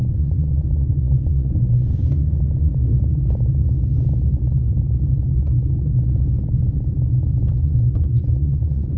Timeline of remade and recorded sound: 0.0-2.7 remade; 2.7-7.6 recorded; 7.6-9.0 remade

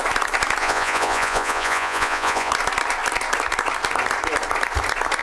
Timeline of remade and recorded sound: 0.0-0.6 recorded; 0.6-2.5 remade; 2.5-5.2 recorded

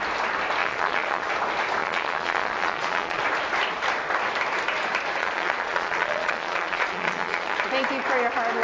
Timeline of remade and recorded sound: 0.0-0.6 recorded; 0.6-1.3 remade; 1.3-1.8 recorded; 1.8-3.2 remade; 3.2-5.2 recorded; 5.2-7.7 remade; 7.7-8.6 recorded

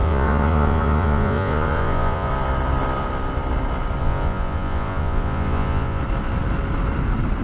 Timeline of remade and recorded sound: 0.0-2.3 remade; 2.3-4.0 recorded; 4.0-6.0 remade; 6.0-7.4 recorded